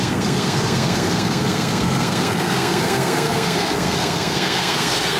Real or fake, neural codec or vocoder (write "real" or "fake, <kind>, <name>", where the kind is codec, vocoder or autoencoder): fake, codec, SNAC